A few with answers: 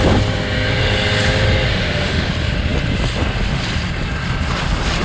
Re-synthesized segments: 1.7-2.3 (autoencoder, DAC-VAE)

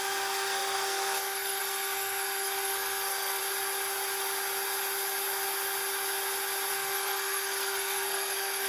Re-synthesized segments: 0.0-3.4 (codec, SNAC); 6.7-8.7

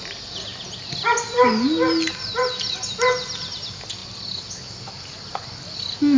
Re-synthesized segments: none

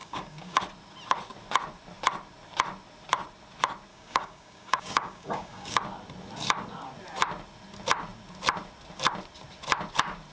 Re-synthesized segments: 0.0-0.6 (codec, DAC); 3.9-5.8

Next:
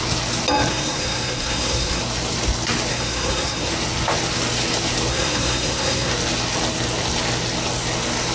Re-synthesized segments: 0.7-2.0 (codec, SNAC); 2.9-3.7; 5.1-6.1